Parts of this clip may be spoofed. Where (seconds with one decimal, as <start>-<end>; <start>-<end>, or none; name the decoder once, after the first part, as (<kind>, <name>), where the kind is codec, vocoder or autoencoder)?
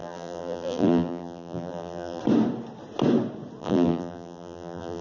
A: 0.0-2.2 (vocoder, BigVGAN v2); 3.6-5.0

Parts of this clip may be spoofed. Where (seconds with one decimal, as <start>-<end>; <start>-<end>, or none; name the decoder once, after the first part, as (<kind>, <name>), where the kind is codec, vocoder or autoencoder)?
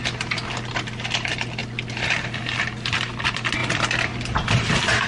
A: 0.7-5.1 (vocoder, BigVGAN v2)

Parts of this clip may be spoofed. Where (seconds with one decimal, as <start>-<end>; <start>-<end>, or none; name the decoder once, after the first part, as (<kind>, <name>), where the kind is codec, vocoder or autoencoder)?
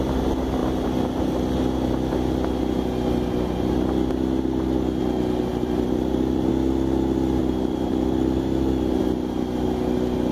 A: 5.5-6.5 (vocoder, BigVGAN v2); 7.4-9.0